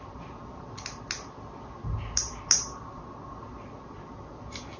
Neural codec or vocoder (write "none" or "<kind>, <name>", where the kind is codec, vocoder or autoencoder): none